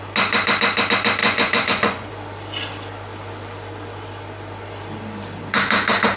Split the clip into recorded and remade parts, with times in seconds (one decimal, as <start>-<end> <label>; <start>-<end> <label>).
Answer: 0.0-1.2 recorded; 1.2-2.1 remade; 2.1-6.2 recorded